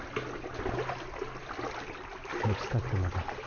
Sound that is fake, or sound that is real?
real